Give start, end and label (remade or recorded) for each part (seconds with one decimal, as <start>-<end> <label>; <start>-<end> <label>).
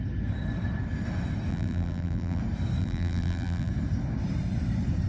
0.0-1.5 recorded; 1.5-2.4 remade; 2.4-2.8 recorded; 2.8-3.7 remade; 3.7-5.1 recorded